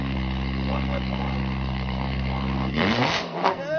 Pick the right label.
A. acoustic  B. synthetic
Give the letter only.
B